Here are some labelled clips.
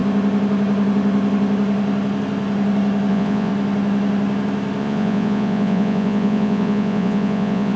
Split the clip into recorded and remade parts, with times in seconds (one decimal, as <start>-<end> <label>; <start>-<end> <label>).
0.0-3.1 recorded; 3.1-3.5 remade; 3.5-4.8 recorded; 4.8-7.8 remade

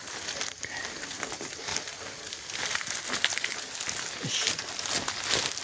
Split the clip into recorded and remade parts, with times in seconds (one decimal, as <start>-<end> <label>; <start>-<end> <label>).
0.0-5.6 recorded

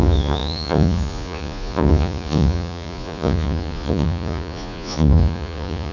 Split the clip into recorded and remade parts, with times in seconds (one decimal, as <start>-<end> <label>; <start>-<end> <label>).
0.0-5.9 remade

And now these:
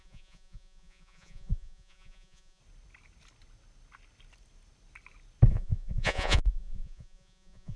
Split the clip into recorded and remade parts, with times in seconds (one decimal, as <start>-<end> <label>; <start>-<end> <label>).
0.0-2.6 remade; 2.6-5.5 recorded; 5.5-7.8 remade